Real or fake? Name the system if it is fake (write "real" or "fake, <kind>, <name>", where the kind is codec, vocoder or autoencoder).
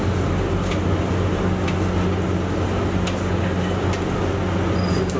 real